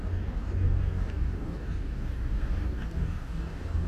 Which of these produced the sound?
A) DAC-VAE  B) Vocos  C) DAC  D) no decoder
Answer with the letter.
C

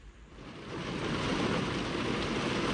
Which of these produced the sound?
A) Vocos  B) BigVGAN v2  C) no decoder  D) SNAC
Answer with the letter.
B